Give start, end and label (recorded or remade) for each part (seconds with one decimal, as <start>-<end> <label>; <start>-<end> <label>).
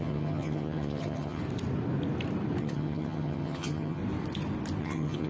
0.0-1.4 remade; 1.4-2.6 recorded; 2.6-4.0 remade; 4.0-4.8 recorded; 4.8-5.3 remade